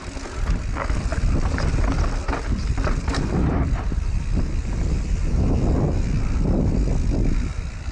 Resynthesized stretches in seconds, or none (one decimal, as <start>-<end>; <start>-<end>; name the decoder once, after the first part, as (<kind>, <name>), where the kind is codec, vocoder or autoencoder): none